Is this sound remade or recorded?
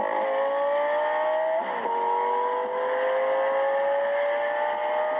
recorded